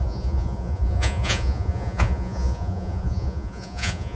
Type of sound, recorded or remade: remade